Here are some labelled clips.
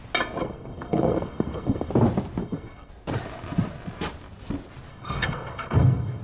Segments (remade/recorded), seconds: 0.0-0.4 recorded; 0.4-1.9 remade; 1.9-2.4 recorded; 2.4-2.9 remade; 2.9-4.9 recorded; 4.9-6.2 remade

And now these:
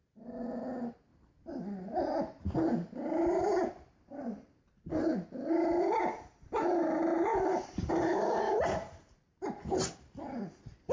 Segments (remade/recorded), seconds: 0.0-1.1 recorded; 1.1-1.6 remade; 1.6-2.7 recorded; 2.7-5.1 remade; 5.1-7.1 recorded; 7.1-10.2 remade; 10.2-10.9 recorded

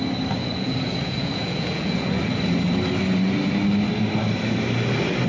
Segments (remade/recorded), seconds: 0.0-0.4 recorded; 0.4-2.4 remade; 2.4-5.3 recorded